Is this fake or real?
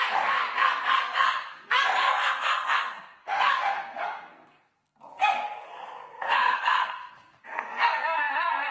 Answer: fake